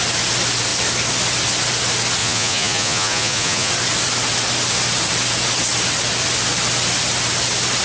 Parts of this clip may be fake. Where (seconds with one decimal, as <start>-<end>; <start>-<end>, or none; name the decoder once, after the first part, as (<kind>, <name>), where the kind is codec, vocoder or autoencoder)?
2.2-3.7 (vocoder, Vocos)